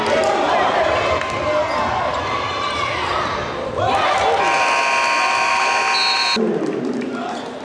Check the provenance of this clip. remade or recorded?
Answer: recorded